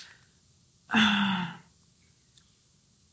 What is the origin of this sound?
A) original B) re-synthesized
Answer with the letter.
A